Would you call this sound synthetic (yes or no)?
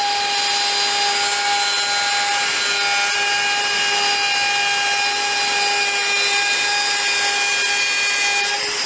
no